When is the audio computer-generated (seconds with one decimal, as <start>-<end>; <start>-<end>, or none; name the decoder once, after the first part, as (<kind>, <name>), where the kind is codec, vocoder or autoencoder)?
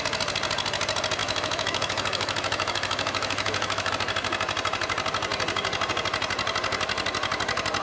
1.2-3.9 (autoencoder, DAC-VAE)